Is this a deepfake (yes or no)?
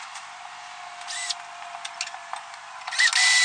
no